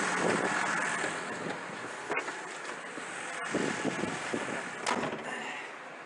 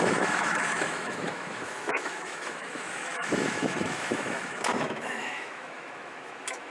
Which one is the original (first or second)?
first